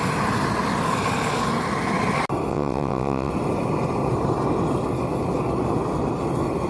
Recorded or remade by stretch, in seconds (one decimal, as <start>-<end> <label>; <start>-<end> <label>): 0.0-2.5 recorded; 2.5-3.3 remade; 3.3-6.7 recorded